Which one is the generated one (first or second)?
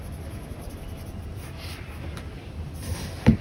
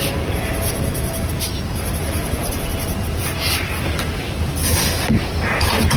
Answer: first